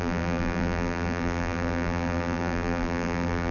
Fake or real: fake